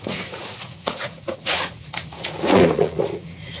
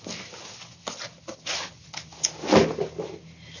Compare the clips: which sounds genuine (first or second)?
second